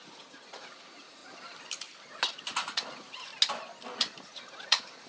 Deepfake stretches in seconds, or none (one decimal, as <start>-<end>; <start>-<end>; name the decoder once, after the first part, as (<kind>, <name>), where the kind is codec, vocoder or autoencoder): 0.0-1.2 (vocoder, Vocos); 2.3-3.3; 4.2-5.1